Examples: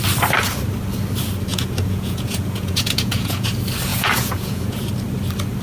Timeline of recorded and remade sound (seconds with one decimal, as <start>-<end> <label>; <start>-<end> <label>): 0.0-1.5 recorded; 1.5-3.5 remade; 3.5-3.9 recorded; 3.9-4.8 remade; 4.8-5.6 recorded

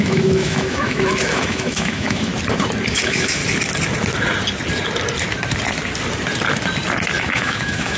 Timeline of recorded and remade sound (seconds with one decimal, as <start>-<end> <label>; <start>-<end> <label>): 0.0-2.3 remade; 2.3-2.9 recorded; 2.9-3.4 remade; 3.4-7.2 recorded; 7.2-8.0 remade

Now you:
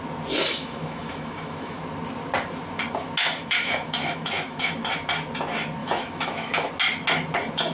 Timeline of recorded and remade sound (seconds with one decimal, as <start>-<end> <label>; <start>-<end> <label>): 0.0-0.5 recorded; 0.5-1.8 remade; 1.8-3.2 recorded; 3.2-4.7 remade; 4.7-5.8 recorded; 5.8-6.7 remade; 6.7-7.7 recorded

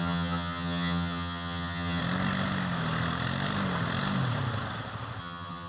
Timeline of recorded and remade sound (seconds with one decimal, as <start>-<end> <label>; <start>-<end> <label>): 0.0-2.0 remade; 2.0-5.2 recorded; 5.2-5.7 remade

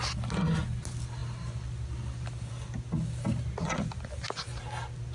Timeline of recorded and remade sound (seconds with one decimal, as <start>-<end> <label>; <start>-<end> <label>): 0.0-5.1 recorded